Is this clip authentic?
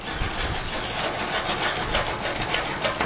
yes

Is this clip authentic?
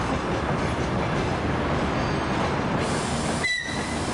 yes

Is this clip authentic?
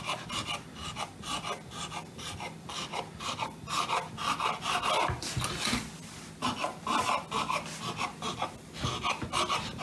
yes